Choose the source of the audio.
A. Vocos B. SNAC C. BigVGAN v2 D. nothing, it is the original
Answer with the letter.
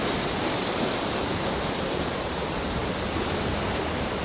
C